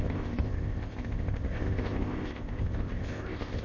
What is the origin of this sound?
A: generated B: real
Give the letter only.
A